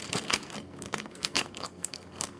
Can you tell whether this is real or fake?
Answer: fake